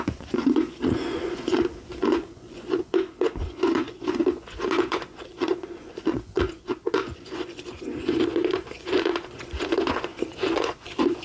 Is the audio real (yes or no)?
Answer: no